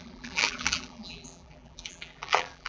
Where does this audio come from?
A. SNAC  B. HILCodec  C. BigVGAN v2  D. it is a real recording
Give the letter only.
C